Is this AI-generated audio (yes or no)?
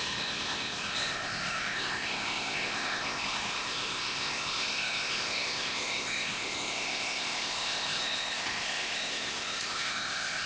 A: yes